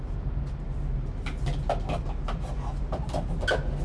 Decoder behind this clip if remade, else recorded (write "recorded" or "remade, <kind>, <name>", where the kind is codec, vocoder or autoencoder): recorded